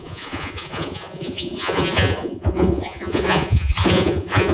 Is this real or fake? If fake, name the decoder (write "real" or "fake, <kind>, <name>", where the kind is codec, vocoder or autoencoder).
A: fake, vocoder, Vocos